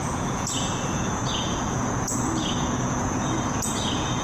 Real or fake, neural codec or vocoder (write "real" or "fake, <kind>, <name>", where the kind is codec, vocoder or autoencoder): fake, vocoder, Vocos